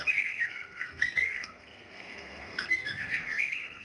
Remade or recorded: remade